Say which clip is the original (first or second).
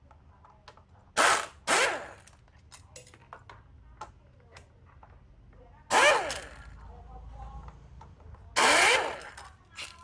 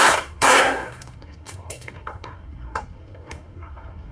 first